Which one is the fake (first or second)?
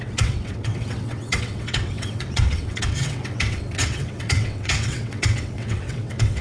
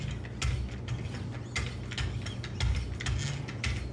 first